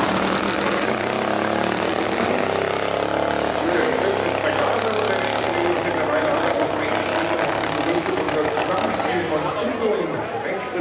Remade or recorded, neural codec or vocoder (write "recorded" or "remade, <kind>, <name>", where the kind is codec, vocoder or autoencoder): recorded